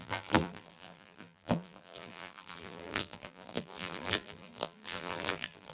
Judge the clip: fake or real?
fake